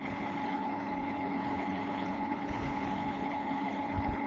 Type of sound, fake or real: fake